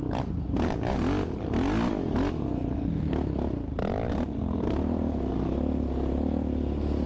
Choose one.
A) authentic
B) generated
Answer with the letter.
A